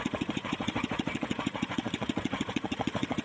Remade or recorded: remade